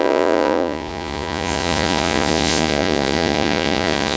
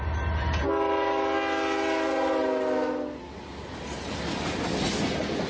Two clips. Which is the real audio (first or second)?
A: second